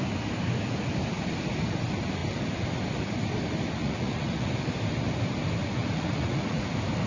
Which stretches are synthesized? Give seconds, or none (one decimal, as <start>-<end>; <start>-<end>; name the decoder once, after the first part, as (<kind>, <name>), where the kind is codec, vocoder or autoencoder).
3.8-4.5 (vocoder, Vocos); 5.6-6.6